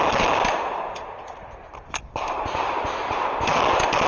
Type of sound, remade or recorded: recorded